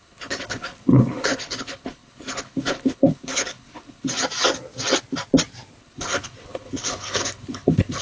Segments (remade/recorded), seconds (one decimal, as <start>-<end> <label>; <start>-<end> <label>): 0.0-4.1 remade; 4.1-5.8 recorded; 5.8-8.0 remade